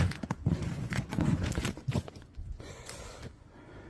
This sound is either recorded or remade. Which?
remade